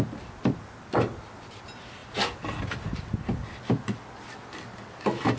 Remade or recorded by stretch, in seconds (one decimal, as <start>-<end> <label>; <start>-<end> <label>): 0.0-5.4 recorded